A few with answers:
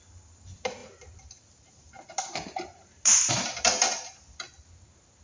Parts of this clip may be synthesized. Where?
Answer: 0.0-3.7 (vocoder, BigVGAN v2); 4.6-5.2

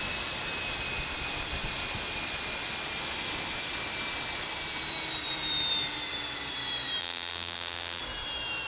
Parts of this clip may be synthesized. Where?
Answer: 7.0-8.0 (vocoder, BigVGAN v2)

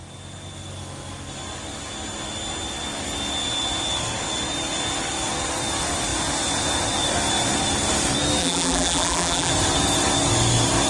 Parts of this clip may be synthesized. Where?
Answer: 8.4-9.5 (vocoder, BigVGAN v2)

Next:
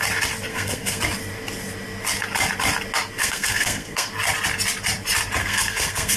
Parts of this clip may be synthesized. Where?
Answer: 0.5-1.0 (codec, SNAC); 3.2-4.1; 5.4-6.2

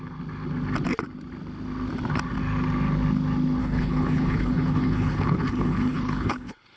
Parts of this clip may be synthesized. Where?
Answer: 3.6-6.8 (codec, HILCodec)

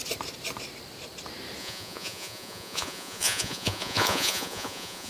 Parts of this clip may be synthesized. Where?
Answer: 1.6-5.1 (vocoder, Vocos)

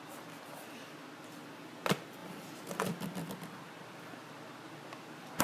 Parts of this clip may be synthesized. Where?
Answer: none